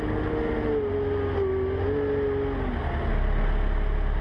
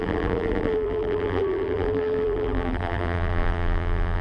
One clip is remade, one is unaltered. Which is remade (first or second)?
second